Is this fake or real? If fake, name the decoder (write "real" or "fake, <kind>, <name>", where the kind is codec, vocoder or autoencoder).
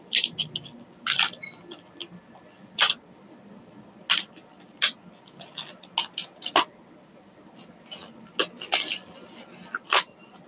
real